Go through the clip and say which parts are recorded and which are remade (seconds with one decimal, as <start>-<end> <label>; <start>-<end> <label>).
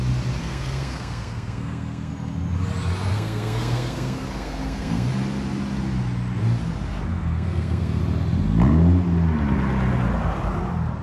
0.0-0.4 recorded; 0.4-2.1 remade; 2.1-3.1 recorded; 3.1-5.1 remade; 5.1-7.1 recorded; 7.1-8.0 remade; 8.0-11.0 recorded